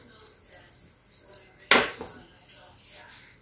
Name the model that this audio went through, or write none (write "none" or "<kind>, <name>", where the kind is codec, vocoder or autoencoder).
none